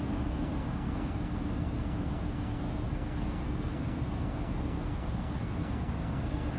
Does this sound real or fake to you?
fake